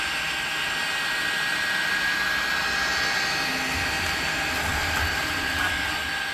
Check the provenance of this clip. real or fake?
real